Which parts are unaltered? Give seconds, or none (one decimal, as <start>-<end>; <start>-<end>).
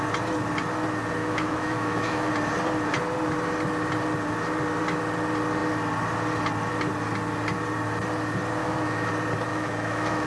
0.0-1.2; 2.3-8.6; 9.1-9.5